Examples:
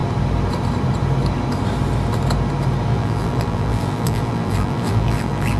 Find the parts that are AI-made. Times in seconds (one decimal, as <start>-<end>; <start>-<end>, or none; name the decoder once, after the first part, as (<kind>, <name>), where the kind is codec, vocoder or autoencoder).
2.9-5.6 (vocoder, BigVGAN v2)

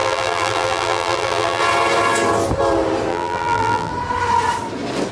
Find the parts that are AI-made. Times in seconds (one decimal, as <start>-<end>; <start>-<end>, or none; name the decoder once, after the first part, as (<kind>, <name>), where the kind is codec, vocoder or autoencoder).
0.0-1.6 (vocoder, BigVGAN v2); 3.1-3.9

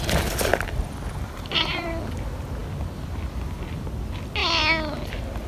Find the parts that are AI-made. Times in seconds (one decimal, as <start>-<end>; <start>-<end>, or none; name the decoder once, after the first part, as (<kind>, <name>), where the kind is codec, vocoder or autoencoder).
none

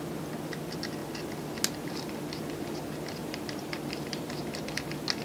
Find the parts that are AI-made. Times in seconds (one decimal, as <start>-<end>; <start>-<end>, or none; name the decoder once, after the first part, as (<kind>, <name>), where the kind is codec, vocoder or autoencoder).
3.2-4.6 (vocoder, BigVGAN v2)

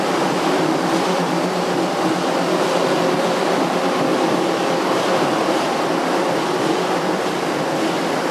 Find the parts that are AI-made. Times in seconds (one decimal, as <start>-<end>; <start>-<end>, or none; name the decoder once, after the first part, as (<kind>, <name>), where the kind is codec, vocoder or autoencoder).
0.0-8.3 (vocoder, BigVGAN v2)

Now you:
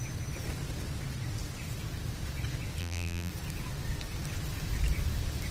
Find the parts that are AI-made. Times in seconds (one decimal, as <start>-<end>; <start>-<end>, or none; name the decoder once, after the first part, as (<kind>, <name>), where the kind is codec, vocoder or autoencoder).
2.8-3.3 (vocoder, BigVGAN v2)

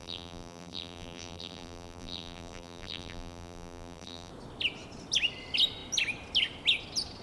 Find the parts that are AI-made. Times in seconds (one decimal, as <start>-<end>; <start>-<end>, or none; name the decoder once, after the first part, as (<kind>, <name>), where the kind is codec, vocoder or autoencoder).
0.0-4.3 (vocoder, BigVGAN v2)

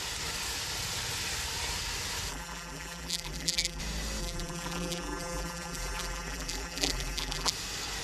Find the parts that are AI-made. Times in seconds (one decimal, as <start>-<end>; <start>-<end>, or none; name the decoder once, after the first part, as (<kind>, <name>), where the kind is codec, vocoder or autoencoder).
2.3-3.8 (vocoder, BigVGAN v2); 4.2-7.5